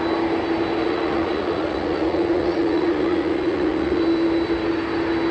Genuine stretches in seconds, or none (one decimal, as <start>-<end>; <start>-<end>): 0.0-0.8; 4.0-5.3